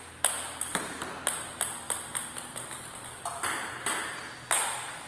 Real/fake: real